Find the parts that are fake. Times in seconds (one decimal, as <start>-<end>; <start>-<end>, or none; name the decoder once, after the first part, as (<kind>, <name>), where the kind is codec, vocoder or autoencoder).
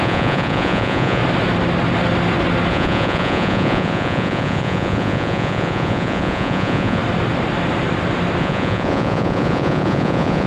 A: 0.0-1.2 (vocoder, Vocos); 2.7-7.0; 8.4-10.5